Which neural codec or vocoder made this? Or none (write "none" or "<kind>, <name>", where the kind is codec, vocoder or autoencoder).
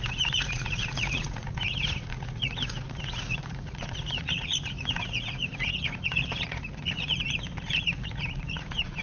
vocoder, Vocos